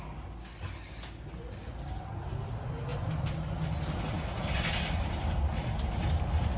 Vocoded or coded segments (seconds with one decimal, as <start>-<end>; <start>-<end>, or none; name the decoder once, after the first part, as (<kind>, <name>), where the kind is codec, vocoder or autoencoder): none